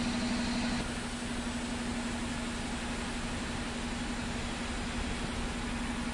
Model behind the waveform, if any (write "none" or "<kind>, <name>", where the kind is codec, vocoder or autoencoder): none